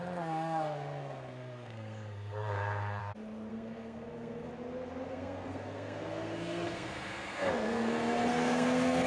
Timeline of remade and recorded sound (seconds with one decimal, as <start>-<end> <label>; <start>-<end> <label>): 0.0-3.0 remade; 3.0-3.5 recorded; 3.5-4.5 remade; 4.5-5.1 recorded; 5.1-9.1 remade